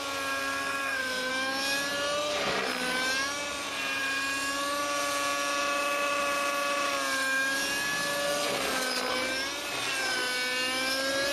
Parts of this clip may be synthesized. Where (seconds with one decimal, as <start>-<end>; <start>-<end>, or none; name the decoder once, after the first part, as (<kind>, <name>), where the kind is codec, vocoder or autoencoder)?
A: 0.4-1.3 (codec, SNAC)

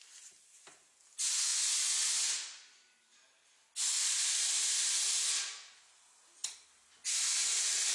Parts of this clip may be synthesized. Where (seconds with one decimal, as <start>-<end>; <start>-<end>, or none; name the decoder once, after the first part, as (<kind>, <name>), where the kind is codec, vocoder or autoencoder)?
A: none

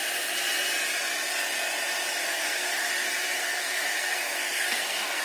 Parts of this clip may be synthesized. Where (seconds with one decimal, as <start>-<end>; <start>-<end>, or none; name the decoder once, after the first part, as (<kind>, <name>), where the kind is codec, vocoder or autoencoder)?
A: 2.2-2.9 (codec, SNAC); 3.4-5.2